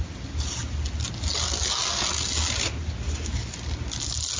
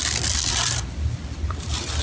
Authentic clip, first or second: first